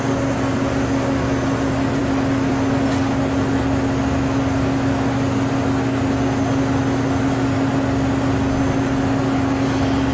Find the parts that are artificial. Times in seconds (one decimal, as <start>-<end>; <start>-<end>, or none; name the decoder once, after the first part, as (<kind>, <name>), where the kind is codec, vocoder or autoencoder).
none